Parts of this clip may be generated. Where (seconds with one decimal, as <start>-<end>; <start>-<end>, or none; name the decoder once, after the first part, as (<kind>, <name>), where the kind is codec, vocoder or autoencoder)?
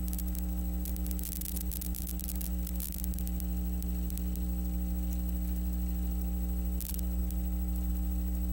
none